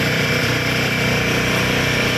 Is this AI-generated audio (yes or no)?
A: yes